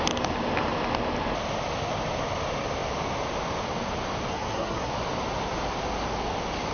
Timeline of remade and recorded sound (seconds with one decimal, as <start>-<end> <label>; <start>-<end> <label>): 0.0-4.3 recorded; 4.3-4.9 remade; 4.9-6.7 recorded